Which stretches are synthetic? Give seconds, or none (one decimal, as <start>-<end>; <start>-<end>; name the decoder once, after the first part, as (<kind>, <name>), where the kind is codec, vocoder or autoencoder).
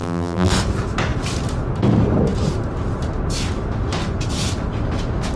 0.0-0.5 (vocoder, BigVGAN v2)